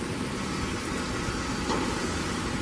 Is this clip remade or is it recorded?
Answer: recorded